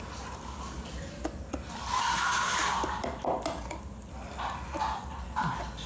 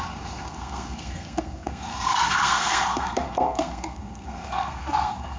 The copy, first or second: second